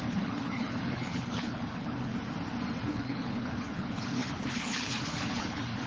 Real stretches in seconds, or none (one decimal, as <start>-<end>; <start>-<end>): 2.1-2.9